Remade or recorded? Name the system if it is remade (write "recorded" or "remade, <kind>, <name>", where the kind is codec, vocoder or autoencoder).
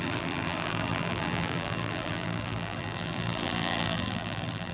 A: remade, vocoder, BigVGAN v2